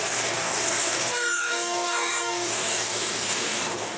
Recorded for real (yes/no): no